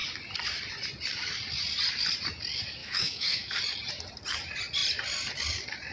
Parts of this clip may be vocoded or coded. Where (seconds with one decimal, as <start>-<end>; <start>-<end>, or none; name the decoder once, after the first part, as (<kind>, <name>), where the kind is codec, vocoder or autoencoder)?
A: 2.8-3.6 (autoencoder, DAC-VAE)